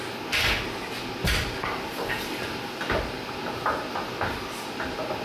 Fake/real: real